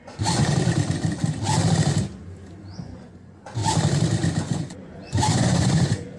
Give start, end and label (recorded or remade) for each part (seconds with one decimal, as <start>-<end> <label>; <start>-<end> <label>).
0.0-0.4 remade; 0.4-2.7 recorded; 2.7-3.6 remade; 3.6-4.4 recorded; 4.4-6.2 remade